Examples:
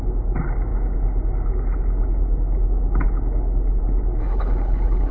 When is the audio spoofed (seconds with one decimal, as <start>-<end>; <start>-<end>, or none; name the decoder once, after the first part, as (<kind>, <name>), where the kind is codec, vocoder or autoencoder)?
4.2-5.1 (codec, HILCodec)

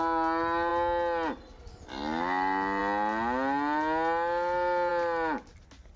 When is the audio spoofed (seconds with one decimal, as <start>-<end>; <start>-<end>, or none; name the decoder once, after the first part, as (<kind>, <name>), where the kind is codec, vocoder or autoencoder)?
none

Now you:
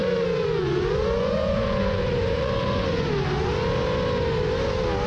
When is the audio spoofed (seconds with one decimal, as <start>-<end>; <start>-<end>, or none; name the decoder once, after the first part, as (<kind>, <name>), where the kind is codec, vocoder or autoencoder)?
0.0-3.1 (vocoder, Vocos)

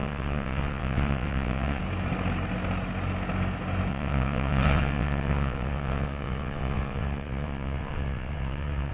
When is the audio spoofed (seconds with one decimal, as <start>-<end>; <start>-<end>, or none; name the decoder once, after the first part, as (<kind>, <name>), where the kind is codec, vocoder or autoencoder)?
0.0-1.8 (vocoder, WaveNeXt); 3.9-8.9

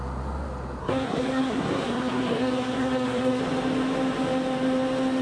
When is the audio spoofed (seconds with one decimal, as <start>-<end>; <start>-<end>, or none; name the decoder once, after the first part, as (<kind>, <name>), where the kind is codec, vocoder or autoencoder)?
0.8-3.4 (codec, SNAC)

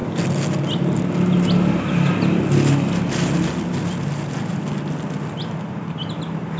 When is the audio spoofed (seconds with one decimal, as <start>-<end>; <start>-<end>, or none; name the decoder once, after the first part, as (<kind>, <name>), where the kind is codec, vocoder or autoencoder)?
none

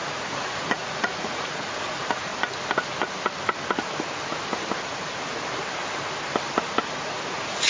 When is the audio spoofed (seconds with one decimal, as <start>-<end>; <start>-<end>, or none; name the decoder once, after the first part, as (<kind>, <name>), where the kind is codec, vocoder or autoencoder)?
0.0-2.3 (vocoder, Vocos); 6.9-7.7